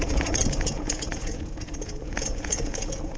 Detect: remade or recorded remade